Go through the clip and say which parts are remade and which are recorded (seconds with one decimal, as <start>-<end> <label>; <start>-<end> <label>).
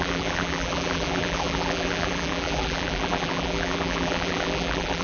0.0-5.0 remade